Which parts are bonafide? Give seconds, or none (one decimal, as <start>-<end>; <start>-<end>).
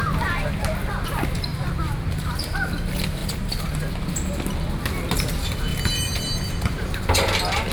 0.0-1.5; 2.4-3.2; 3.7-5.7; 7.0-7.7